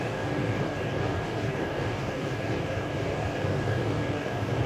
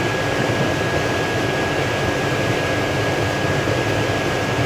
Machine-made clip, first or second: first